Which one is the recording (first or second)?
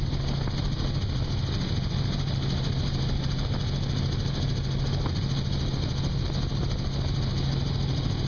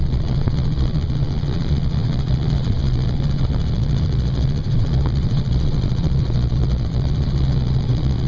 first